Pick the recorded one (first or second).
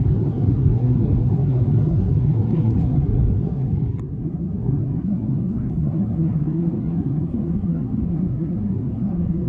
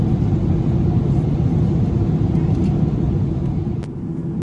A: second